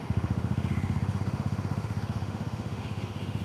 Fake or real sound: fake